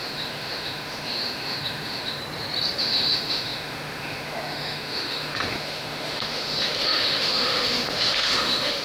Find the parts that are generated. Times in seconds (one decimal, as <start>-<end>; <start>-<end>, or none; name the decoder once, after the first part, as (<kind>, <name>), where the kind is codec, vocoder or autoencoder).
0.0-2.2 (autoencoder, DAC-VAE); 2.8-8.8